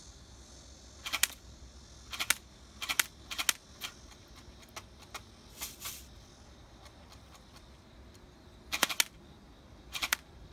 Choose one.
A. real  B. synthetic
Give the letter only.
A